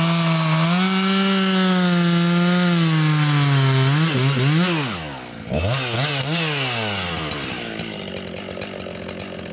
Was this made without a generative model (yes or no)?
yes